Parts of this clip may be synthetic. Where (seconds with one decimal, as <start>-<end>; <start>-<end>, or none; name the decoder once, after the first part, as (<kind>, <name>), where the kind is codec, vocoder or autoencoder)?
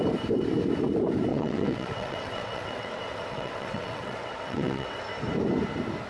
1.3-5.0 (vocoder, WaveNeXt)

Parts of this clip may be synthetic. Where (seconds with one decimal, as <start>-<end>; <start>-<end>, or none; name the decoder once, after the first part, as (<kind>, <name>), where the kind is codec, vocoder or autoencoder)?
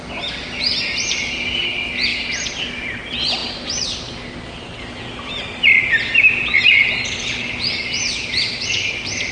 none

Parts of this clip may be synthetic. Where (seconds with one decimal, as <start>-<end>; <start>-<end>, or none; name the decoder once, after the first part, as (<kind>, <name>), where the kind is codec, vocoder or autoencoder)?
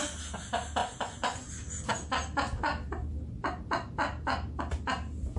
0.8-1.5 (vocoder, Vocos)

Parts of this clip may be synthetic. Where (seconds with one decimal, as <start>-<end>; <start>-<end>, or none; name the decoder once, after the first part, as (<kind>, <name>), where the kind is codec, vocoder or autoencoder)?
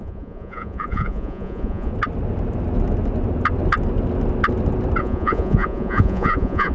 0.0-1.9 (vocoder, Vocos); 5.0-6.7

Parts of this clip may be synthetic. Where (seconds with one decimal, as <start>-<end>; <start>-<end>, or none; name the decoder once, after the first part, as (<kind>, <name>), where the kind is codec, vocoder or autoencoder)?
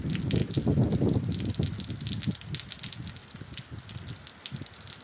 0.4-1.5 (vocoder, BigVGAN v2)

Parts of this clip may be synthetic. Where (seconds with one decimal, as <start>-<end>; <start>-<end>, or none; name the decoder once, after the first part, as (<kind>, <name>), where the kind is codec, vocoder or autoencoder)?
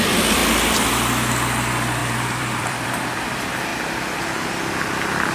0.4-0.9 (vocoder, BigVGAN v2); 2.0-3.2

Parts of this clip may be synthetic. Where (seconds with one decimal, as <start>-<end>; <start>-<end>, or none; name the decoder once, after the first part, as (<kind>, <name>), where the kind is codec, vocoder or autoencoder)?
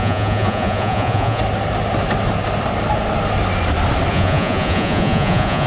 0.0-1.4 (vocoder, Vocos); 4.1-5.7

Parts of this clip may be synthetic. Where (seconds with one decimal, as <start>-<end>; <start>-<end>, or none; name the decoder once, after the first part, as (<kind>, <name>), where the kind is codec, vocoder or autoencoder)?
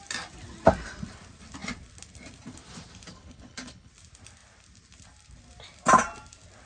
3.1-3.9 (codec, HILCodec)